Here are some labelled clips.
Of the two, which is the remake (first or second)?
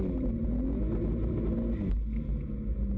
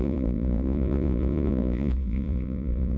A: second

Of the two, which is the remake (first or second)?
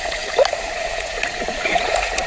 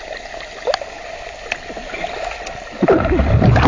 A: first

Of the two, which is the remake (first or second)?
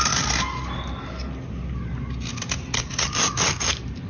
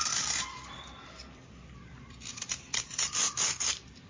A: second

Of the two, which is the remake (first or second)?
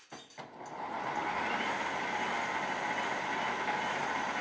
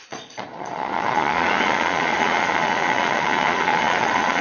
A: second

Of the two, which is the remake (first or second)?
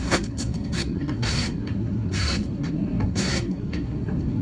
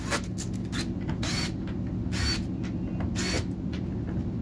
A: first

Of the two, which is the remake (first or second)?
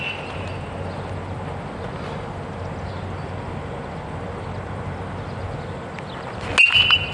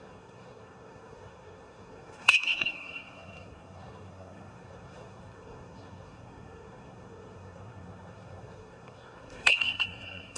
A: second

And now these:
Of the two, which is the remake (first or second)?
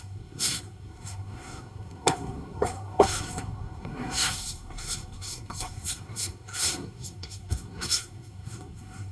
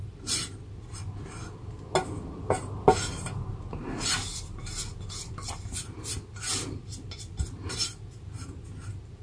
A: first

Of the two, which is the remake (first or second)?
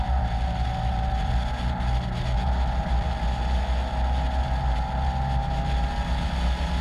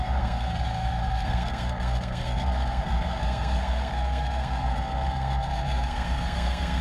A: second